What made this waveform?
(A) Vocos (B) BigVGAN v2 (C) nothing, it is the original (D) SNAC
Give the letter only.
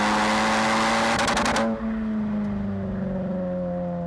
C